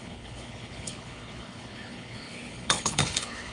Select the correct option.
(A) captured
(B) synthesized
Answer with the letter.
B